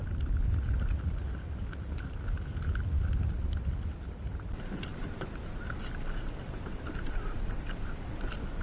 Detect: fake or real real